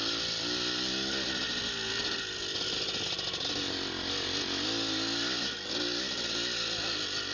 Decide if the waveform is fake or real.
real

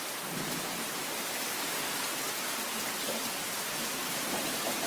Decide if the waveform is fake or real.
fake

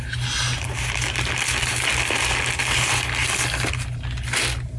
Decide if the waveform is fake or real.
real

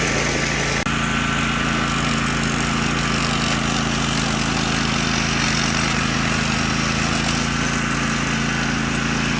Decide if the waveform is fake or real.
real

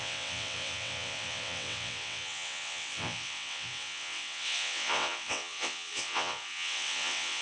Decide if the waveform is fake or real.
fake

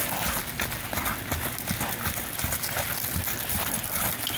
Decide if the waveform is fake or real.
real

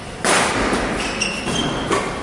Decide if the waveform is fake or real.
real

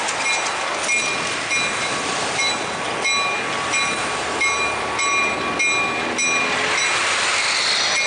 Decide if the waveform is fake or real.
real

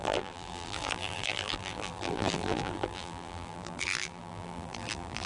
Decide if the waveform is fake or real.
fake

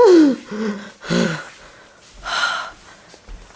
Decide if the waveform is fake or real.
real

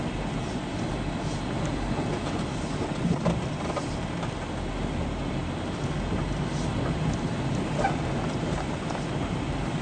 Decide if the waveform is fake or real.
real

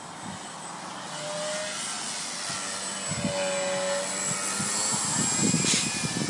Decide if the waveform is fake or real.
real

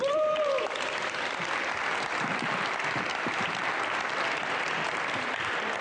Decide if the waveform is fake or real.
fake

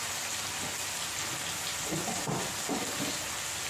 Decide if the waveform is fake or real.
real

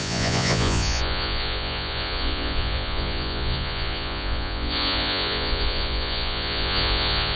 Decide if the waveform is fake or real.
fake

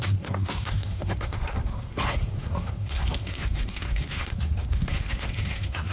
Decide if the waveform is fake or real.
fake